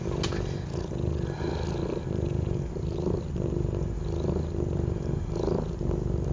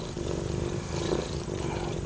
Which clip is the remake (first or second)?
second